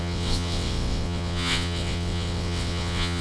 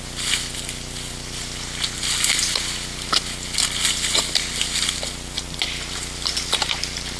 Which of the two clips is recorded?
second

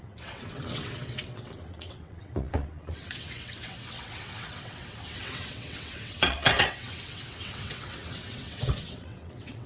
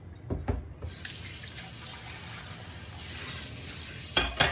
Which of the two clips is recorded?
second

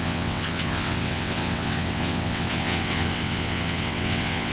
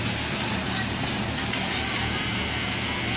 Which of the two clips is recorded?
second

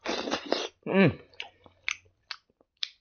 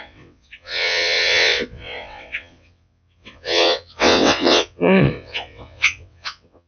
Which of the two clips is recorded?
first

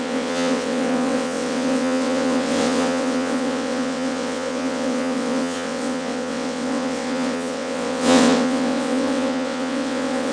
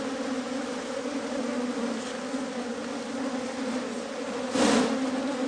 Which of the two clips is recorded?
second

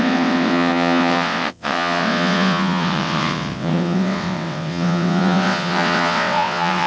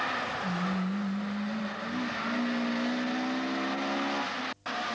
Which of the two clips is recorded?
second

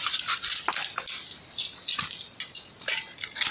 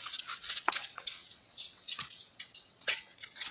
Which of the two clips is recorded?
first